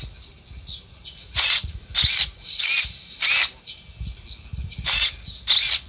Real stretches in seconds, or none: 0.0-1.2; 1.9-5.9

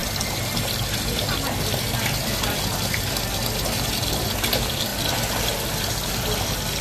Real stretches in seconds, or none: 0.0-6.8

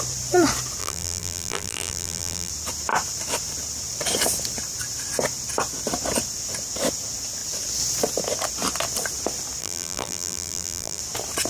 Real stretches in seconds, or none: 0.0-0.8; 2.5-9.6; 11.0-11.5

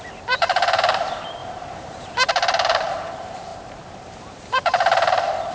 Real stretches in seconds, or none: none

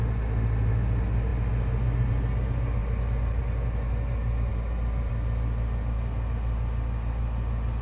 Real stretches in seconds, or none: 0.0-7.8

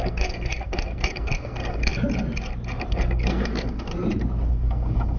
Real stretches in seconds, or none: 1.9-2.9; 3.9-4.5

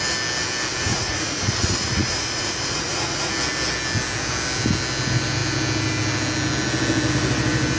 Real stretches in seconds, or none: 0.0-0.9; 3.3-7.8